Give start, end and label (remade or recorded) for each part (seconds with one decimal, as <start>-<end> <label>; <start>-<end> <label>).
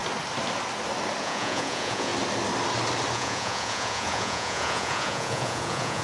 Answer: 0.0-1.2 recorded; 1.2-2.1 remade; 2.1-3.1 recorded; 3.1-6.0 remade